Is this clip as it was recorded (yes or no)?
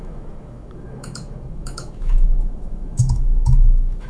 no